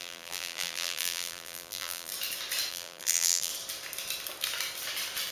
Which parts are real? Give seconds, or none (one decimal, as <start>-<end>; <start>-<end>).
2.1-2.7; 3.5-5.3